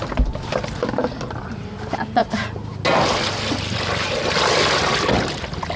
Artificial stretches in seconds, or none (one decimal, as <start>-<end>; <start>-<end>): none